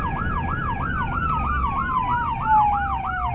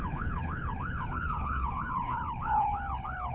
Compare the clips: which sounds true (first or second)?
first